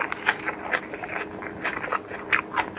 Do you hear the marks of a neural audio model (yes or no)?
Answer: no